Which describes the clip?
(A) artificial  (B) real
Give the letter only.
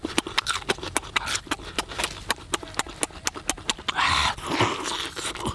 B